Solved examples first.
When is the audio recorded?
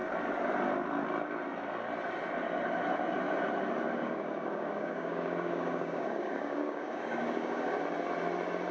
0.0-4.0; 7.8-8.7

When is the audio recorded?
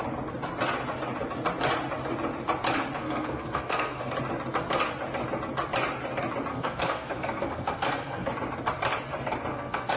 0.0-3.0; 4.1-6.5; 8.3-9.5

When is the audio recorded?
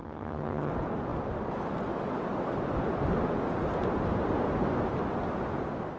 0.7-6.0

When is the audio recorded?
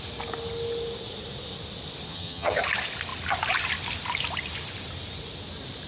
0.0-2.1; 2.6-5.9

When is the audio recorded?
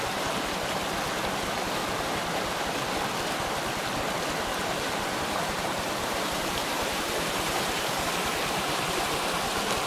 0.0-4.5; 9.1-9.9